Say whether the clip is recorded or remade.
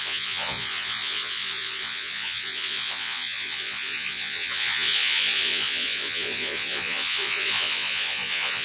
remade